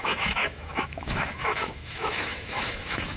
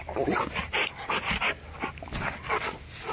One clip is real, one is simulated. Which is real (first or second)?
second